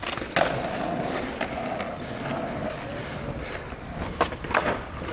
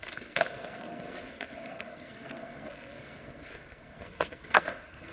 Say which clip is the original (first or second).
first